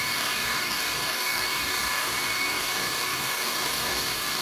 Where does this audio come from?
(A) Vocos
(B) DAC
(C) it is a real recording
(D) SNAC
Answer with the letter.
B